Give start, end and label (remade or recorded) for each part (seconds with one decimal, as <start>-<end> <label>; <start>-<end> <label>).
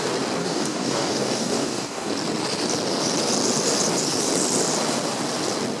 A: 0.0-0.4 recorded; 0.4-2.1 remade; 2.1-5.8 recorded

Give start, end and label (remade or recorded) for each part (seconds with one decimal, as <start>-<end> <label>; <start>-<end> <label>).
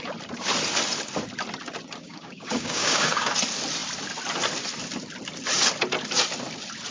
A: 0.0-2.0 recorded; 2.0-3.3 remade; 3.3-6.9 recorded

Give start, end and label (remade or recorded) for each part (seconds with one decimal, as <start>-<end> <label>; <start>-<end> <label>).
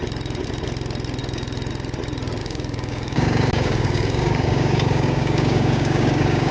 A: 0.0-2.4 recorded; 2.4-6.5 remade